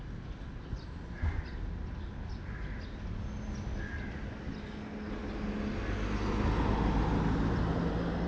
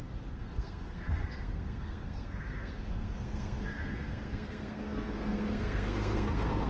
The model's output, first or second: second